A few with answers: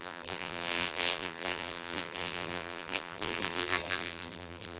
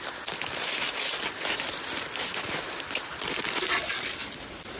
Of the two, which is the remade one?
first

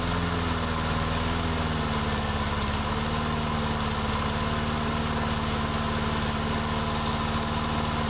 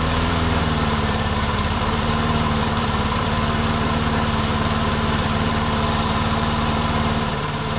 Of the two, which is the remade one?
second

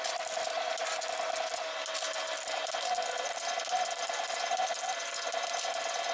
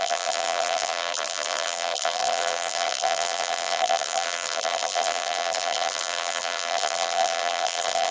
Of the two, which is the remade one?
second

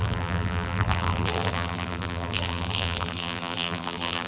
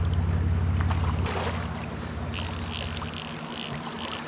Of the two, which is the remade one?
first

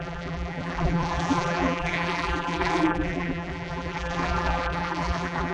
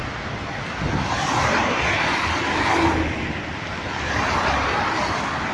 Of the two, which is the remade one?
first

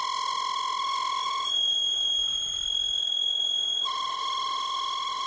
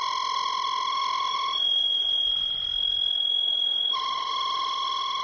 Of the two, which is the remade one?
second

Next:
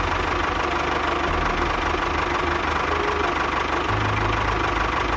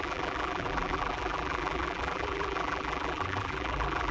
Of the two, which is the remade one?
second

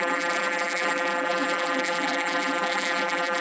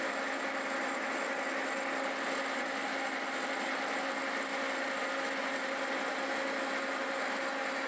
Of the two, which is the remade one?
first